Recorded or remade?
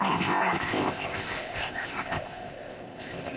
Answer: remade